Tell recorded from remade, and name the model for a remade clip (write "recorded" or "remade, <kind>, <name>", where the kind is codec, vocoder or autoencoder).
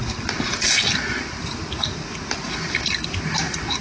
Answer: recorded